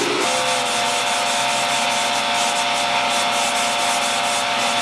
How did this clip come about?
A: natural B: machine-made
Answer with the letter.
A